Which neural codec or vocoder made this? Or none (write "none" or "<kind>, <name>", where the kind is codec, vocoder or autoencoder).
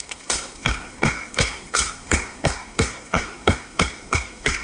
codec, SNAC